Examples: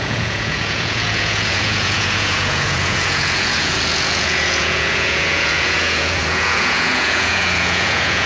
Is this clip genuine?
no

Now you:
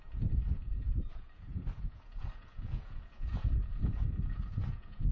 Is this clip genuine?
no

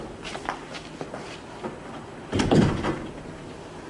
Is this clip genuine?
yes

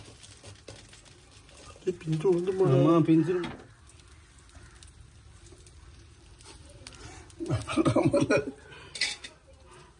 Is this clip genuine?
yes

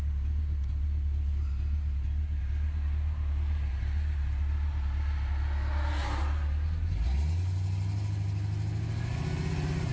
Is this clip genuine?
yes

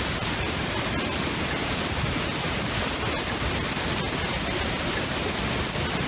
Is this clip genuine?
yes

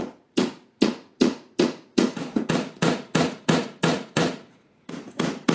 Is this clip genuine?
no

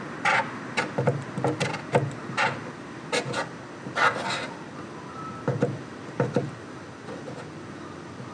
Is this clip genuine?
yes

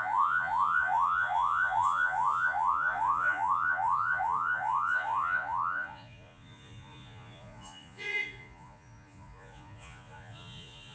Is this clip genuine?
no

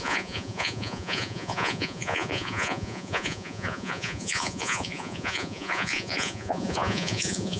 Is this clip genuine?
no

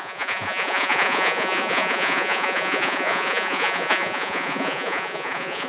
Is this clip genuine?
no